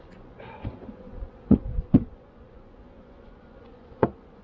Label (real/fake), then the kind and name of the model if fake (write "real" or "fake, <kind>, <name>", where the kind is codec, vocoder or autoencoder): fake, vocoder, Vocos